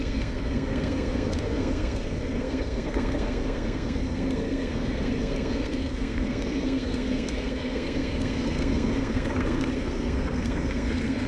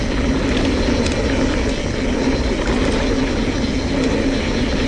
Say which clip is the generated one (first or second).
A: first